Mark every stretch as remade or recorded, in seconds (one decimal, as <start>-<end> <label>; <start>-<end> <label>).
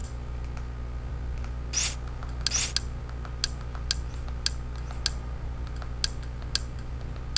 0.0-7.4 recorded